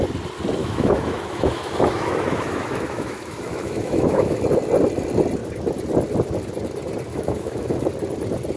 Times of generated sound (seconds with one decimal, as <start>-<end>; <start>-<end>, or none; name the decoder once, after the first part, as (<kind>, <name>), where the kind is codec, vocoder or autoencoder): 0.6-4.4 (autoencoder, DAC-VAE); 7.1-7.9